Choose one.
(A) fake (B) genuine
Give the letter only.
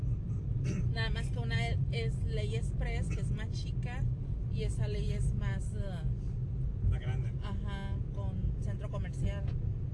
B